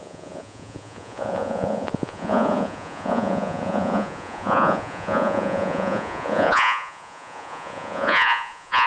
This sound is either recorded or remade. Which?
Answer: remade